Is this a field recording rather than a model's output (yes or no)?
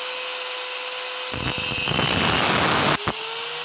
yes